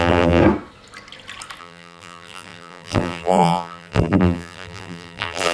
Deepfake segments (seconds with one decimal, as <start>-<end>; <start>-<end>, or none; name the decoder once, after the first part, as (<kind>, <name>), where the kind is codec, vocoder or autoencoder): 0.0-0.4 (vocoder, BigVGAN v2); 1.6-5.5